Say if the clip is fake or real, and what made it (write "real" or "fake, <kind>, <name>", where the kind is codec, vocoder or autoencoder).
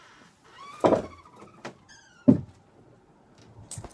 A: real